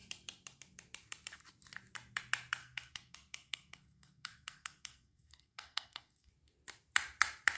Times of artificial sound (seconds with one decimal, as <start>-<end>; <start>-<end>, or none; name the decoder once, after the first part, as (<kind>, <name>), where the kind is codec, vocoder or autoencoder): 2.6-6.3 (codec, SNAC)